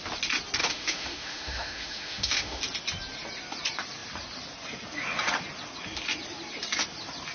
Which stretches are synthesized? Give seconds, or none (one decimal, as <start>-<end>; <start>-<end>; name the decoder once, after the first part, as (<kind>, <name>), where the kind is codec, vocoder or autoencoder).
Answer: 0.6-2.6 (autoencoder, DAC-VAE)

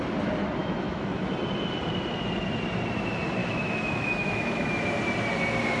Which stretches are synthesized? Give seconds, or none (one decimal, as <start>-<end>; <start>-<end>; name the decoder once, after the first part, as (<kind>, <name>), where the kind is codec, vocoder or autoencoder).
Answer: 0.6-1.2 (autoencoder, DAC-VAE); 3.4-4.9

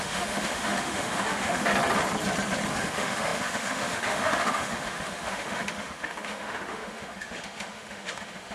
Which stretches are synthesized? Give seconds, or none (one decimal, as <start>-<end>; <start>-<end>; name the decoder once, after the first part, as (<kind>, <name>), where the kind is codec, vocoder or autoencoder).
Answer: 0.0-1.7 (autoencoder, DAC-VAE); 2.7-8.5

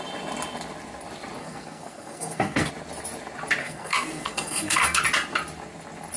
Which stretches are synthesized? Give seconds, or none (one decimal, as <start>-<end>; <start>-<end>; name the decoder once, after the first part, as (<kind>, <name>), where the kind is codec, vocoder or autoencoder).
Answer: 1.4-2.7 (codec, SNAC); 3.6-5.0

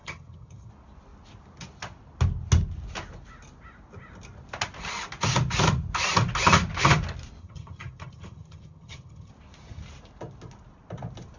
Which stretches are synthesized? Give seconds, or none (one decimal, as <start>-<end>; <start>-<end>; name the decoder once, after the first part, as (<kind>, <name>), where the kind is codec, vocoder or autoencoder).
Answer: 0.0-0.7 (vocoder, HiFi-GAN); 7.4-9.3

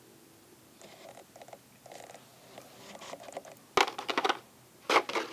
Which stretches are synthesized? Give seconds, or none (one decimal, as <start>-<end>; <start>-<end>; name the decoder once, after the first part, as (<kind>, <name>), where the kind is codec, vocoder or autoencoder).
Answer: none

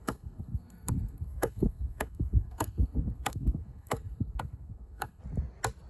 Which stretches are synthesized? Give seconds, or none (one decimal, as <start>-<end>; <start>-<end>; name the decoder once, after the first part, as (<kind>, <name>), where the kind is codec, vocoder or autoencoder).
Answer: 0.0-5.2 (codec, SNAC)

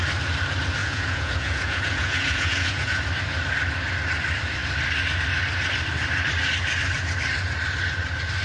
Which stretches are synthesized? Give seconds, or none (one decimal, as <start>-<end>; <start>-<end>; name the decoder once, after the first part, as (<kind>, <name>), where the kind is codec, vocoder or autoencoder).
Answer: 0.8-3.0 (vocoder, Vocos)